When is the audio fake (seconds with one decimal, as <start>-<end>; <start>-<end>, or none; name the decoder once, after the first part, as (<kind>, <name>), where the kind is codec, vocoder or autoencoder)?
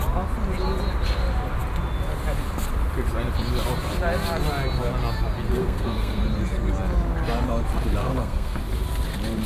5.6-6.2 (codec, SNAC); 8.0-8.6